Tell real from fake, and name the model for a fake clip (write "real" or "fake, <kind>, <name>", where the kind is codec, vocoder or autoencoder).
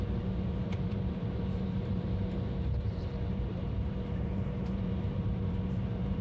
fake, vocoder, BigVGAN v2